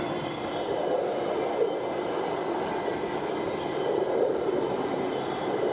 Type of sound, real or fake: real